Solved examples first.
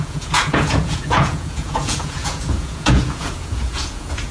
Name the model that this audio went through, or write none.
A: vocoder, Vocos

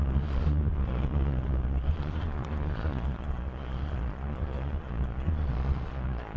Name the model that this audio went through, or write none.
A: vocoder, Vocos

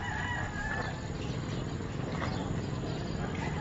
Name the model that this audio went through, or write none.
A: none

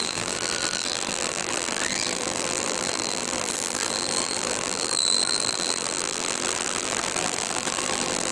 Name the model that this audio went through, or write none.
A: vocoder, BigVGAN v2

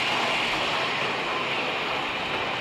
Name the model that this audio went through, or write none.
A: none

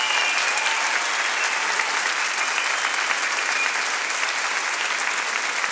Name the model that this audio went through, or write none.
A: none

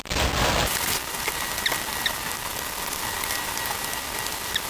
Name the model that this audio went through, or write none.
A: none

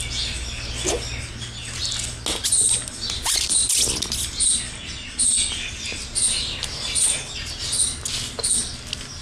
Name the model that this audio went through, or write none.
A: none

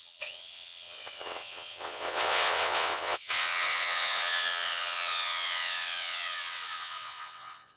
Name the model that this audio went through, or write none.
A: vocoder, WaveNeXt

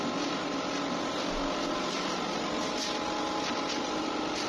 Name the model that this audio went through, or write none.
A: none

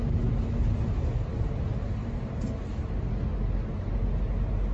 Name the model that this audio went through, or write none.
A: none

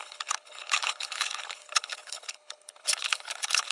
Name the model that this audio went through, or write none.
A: codec, HILCodec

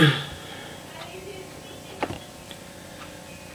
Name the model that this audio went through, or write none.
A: none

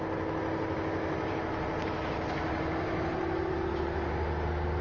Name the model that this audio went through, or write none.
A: none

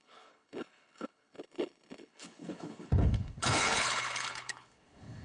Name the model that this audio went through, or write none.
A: codec, HILCodec